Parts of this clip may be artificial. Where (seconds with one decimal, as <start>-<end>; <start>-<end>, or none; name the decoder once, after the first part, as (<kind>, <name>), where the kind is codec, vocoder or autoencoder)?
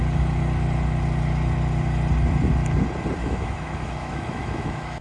3.2-5.0 (autoencoder, DAC-VAE)